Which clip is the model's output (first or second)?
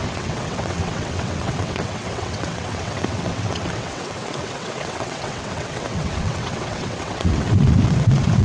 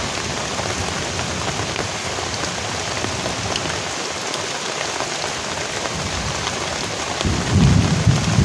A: first